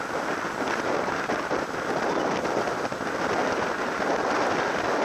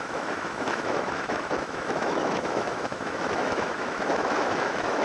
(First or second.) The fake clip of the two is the second